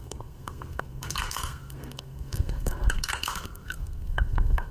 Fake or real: fake